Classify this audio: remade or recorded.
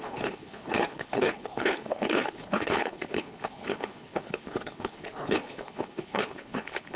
remade